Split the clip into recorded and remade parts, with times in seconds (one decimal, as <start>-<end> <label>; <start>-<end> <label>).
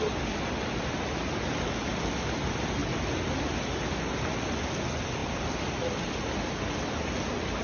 0.0-7.6 recorded